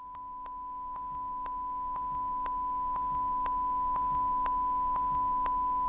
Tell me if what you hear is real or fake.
real